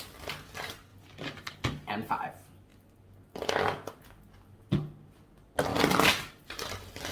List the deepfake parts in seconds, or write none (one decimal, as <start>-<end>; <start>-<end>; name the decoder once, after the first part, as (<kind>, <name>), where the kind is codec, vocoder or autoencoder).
none